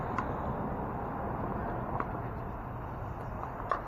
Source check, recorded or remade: recorded